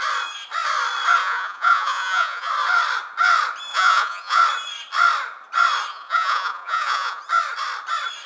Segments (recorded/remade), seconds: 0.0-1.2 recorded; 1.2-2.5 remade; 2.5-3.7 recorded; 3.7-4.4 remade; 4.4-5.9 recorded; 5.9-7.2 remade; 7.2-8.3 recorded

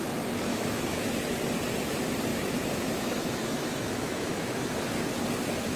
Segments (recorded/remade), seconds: 0.0-0.5 recorded; 0.5-1.1 remade; 1.1-2.3 recorded; 2.3-4.9 remade; 4.9-5.8 recorded